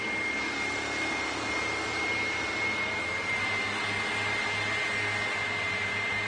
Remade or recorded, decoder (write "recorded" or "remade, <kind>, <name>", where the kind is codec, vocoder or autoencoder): recorded